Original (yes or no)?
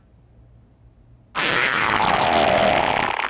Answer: yes